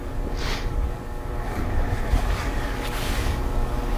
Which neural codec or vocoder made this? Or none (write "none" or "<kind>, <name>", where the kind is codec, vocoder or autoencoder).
codec, DAC